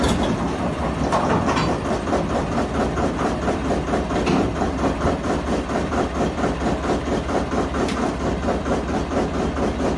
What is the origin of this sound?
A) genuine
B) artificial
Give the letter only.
B